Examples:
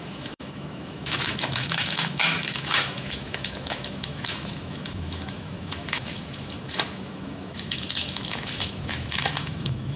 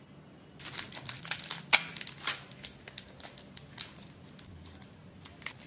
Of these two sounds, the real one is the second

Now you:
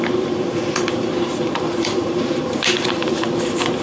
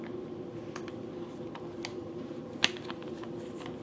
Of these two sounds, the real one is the second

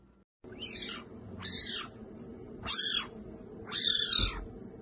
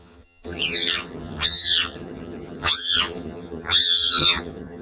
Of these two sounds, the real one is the first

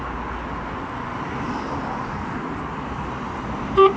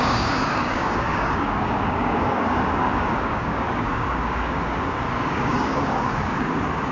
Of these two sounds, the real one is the first